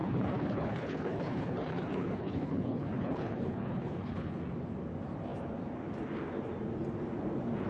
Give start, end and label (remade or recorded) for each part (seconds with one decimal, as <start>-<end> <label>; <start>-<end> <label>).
0.0-4.3 remade; 4.3-7.7 recorded